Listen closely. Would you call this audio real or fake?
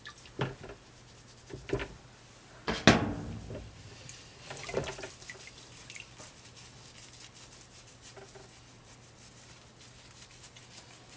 real